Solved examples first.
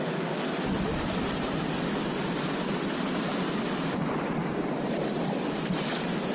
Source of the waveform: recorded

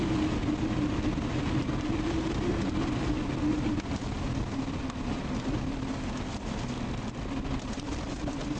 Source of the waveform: recorded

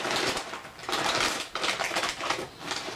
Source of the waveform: remade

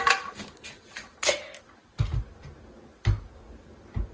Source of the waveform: recorded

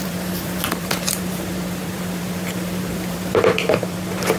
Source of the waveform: remade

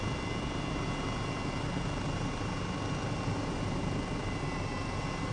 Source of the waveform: recorded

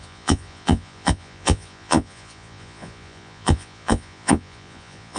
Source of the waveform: remade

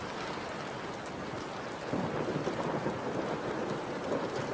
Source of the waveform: recorded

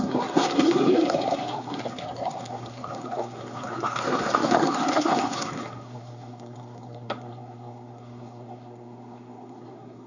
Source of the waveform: remade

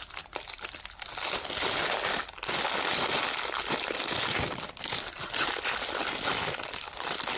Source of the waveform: recorded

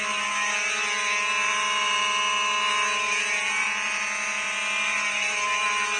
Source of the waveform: remade